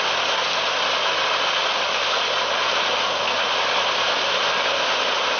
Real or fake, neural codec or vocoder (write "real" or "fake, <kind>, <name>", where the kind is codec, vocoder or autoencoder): real